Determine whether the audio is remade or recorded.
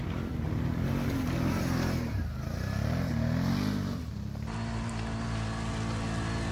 recorded